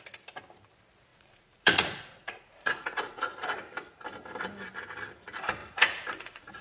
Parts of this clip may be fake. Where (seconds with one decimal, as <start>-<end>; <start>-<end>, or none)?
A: 1.1-3.3; 5.6-6.6